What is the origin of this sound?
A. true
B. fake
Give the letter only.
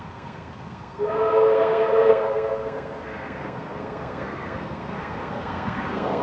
B